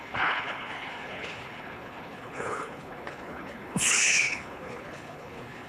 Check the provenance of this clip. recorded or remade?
remade